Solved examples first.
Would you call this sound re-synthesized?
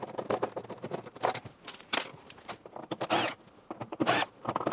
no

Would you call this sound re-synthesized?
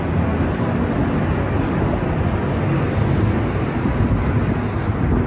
no